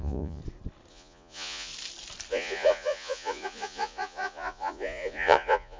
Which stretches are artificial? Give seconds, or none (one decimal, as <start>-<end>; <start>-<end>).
0.0-0.4; 0.9-1.7; 2.3-5.8